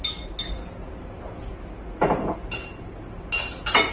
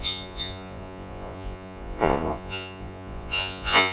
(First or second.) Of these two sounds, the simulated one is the second